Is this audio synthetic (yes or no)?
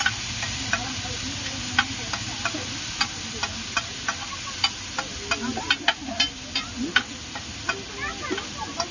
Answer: no